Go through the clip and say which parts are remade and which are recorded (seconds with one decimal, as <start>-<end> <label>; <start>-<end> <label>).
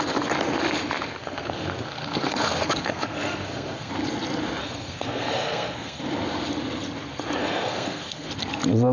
0.0-1.2 recorded; 1.2-3.9 remade; 3.9-4.6 recorded; 4.6-6.0 remade; 6.0-7.4 recorded; 7.4-8.3 remade; 8.3-8.9 recorded